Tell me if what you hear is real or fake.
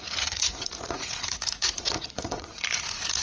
fake